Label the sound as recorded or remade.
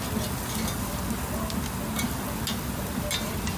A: recorded